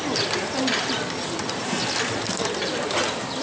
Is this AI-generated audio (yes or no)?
no